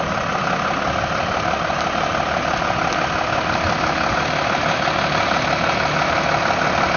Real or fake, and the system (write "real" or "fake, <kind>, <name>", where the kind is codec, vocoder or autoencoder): real